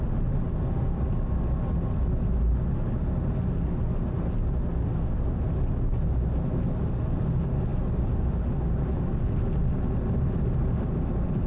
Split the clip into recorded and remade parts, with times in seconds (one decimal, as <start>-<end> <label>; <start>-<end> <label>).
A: 0.0-11.5 recorded

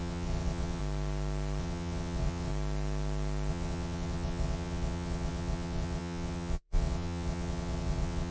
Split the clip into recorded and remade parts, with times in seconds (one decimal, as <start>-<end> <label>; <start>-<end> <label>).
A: 0.0-0.8 remade; 0.8-1.6 recorded; 1.6-2.5 remade; 2.5-3.5 recorded; 3.5-8.3 remade

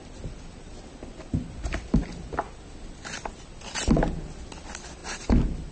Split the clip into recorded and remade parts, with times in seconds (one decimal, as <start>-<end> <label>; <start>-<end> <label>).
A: 0.0-5.7 recorded

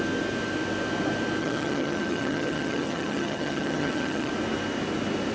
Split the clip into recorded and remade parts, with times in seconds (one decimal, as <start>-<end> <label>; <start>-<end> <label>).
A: 0.0-1.4 recorded; 1.4-4.3 remade; 4.3-5.3 recorded

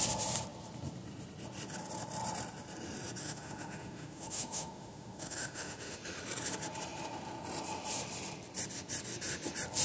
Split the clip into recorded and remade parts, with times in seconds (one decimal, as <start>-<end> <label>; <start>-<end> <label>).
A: 0.0-3.2 recorded; 3.2-6.0 remade; 6.0-9.8 recorded

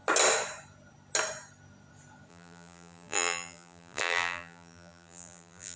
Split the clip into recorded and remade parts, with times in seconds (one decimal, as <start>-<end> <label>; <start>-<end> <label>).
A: 0.0-2.3 recorded; 2.3-5.8 remade

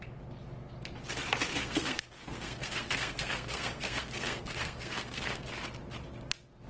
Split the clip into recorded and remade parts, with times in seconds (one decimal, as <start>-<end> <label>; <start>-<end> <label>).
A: 0.0-1.5 recorded; 1.5-5.5 remade; 5.5-6.7 recorded

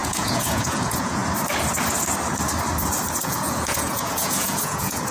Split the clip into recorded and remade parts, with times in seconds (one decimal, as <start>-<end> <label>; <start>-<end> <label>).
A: 0.0-1.2 remade; 1.2-3.2 recorded; 3.2-5.1 remade